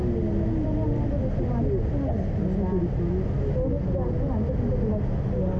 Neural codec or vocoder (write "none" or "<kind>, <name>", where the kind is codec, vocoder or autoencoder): none